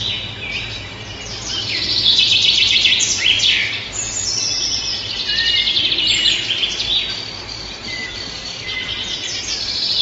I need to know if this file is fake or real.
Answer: real